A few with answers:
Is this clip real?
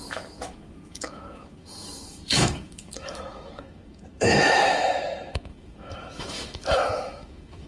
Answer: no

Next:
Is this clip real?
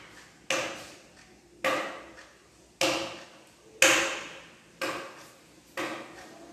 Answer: yes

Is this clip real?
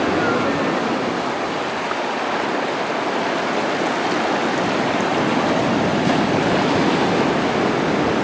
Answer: yes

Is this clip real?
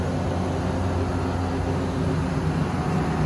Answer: yes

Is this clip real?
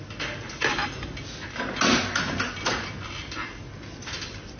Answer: yes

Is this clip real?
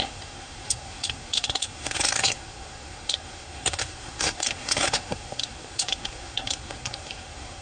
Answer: no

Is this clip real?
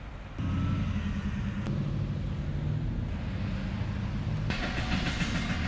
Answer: yes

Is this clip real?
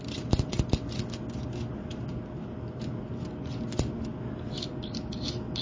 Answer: yes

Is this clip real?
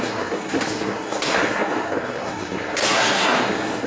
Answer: no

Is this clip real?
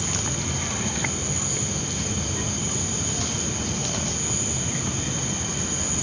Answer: yes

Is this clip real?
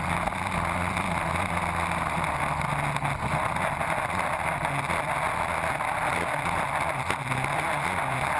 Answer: yes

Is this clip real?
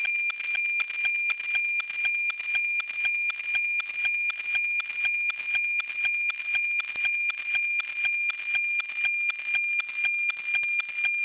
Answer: yes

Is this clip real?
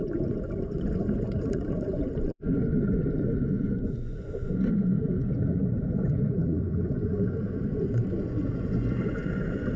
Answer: no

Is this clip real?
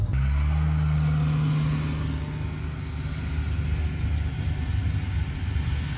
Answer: yes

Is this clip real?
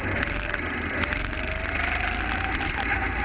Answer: yes